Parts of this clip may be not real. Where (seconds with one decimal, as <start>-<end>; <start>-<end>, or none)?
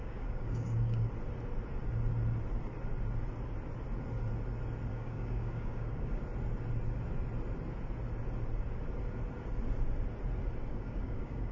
0.0-1.1; 4.9-6.2; 10.7-11.5